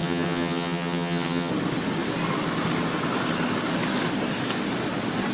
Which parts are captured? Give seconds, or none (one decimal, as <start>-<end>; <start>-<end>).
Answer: 1.5-5.3